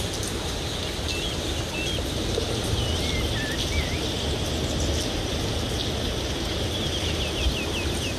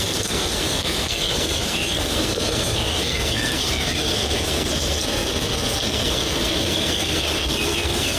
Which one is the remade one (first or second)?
second